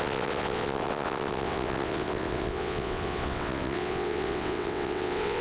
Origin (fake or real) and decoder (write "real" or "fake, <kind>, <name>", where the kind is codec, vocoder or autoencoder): fake, vocoder, WaveNeXt